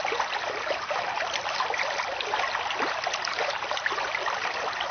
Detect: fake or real real